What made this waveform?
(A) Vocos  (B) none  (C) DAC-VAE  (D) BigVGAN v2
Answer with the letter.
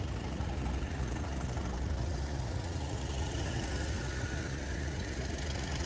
A